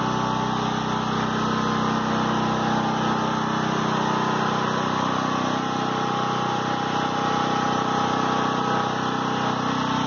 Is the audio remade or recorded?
recorded